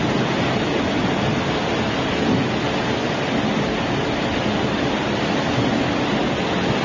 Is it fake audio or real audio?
real